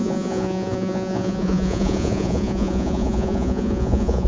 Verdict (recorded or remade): remade